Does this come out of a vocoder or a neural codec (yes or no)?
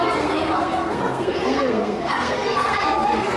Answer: yes